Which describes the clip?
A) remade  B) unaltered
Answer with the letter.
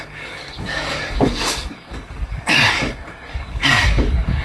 A